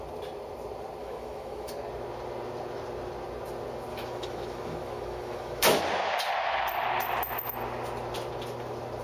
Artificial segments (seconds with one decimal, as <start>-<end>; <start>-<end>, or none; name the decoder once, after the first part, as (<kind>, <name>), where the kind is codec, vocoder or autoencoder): 1.0-1.7 (autoencoder, DAC-VAE); 3.9-5.8